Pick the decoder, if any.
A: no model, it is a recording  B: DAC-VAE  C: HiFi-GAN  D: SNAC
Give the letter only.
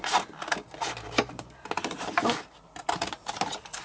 A